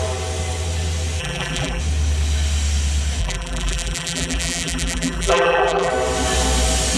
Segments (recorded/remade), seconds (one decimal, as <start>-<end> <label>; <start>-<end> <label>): 0.0-1.2 recorded; 1.2-1.8 remade; 1.8-3.2 recorded; 3.2-5.9 remade; 5.9-7.0 recorded